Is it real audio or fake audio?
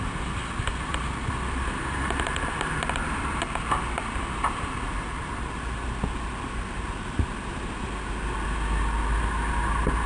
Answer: fake